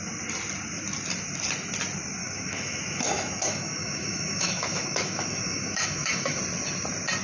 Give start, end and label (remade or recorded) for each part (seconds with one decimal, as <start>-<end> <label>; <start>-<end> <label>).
0.0-2.2 recorded; 2.2-6.4 remade; 6.4-7.2 recorded